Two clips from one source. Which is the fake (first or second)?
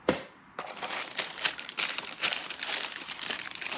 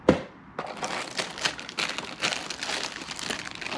first